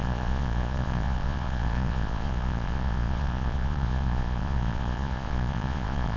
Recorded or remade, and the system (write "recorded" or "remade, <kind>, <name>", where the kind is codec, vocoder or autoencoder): remade, vocoder, Vocos